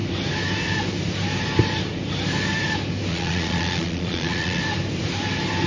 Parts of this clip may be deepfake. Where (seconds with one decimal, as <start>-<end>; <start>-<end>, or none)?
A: 3.1-4.6